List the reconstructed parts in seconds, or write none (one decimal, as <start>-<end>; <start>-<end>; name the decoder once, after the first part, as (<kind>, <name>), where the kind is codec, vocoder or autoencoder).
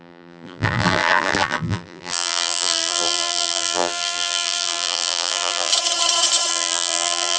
0.0-5.7 (vocoder, BigVGAN v2); 6.5-7.4